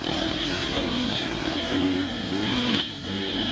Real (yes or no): no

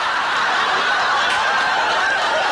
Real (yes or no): yes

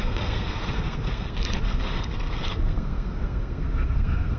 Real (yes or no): no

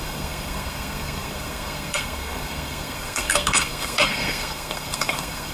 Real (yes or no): no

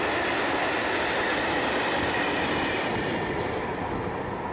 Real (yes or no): yes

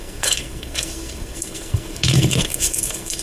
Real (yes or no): no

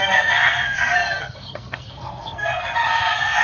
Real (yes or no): no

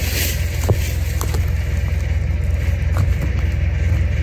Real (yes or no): yes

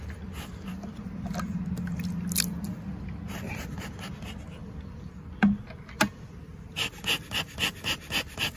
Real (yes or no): yes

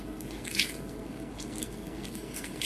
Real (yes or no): no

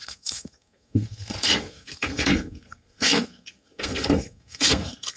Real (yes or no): no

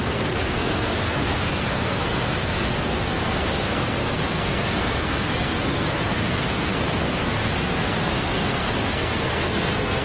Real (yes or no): no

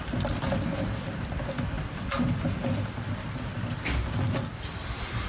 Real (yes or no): yes